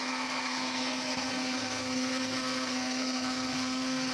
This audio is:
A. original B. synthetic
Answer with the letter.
B